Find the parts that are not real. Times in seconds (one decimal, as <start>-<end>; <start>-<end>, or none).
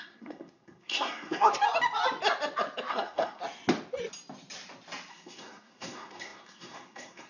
0.0-1.5; 2.9-3.4; 5.1-7.3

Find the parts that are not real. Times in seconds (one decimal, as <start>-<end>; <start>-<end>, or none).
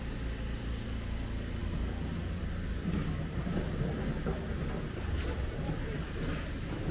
none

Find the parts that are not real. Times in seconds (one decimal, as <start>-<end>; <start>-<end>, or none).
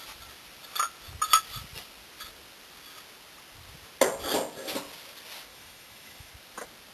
5.5-6.3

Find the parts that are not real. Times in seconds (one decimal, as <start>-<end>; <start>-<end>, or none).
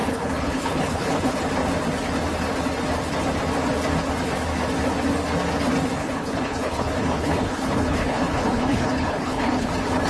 0.0-1.4; 6.0-9.7